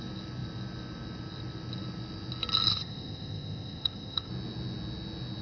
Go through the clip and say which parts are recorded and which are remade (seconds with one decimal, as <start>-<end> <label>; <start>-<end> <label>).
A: 0.0-2.7 recorded; 2.7-4.3 remade; 4.3-5.4 recorded